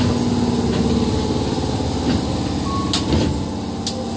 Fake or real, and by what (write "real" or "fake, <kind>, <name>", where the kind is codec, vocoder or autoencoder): real